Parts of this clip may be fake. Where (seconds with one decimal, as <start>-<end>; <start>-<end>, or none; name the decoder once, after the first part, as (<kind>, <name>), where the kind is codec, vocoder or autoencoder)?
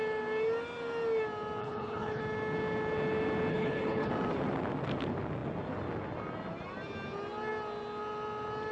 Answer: 1.6-2.2 (codec, HILCodec); 3.5-4.1